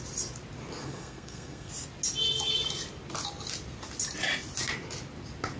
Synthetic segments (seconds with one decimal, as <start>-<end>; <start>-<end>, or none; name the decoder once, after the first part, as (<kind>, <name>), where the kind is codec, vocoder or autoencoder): 0.8-1.7 (codec, SNAC)